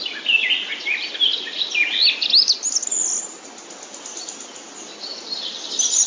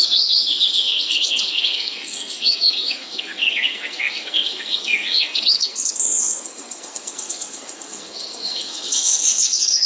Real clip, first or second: first